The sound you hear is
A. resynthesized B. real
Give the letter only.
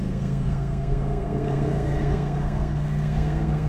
A